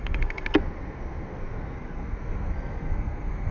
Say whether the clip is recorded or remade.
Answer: remade